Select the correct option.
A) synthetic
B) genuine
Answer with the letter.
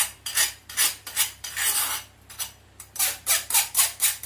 A